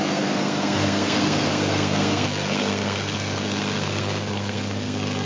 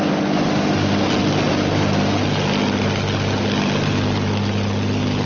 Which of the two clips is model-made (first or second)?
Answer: first